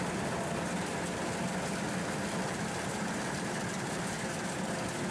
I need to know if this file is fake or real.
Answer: real